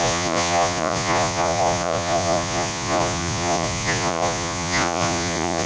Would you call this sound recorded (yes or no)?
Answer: no